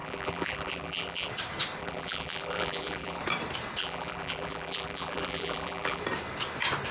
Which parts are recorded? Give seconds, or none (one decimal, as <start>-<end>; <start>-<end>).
1.3-1.8; 3.2-3.8; 6.0-6.9